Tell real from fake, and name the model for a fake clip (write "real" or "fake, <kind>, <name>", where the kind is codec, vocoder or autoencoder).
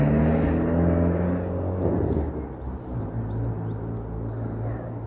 real